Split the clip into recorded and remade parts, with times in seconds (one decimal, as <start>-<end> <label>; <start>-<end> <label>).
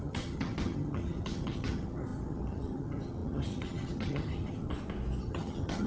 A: 0.0-4.7 remade; 4.7-5.2 recorded; 5.2-5.9 remade